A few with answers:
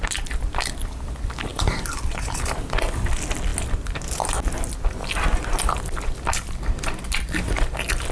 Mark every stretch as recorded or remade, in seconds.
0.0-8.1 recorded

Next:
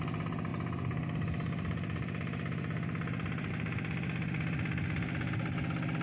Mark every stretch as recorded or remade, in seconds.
0.0-6.0 recorded

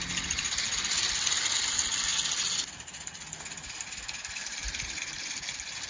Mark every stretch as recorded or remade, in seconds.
0.0-5.9 recorded